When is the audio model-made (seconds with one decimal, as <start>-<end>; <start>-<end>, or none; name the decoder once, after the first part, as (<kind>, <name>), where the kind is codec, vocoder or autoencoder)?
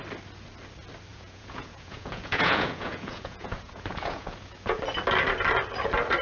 1.1-4.8 (vocoder, Vocos)